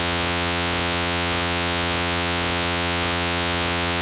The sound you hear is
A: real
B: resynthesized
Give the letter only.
B